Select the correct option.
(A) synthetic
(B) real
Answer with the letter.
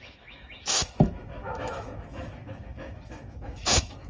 A